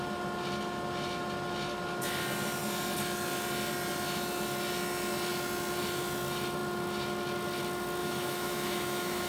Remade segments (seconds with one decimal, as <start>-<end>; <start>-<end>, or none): 8.0-9.3